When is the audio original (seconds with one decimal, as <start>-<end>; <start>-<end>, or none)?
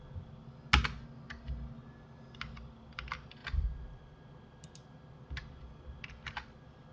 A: 0.0-6.9